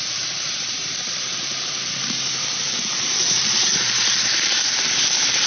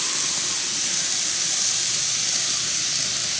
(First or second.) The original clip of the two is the second